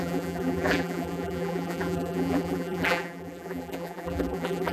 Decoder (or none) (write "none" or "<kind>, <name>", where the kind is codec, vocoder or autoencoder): vocoder, BigVGAN v2